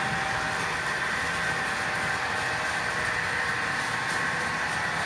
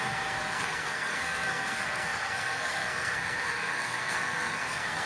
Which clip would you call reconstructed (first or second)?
second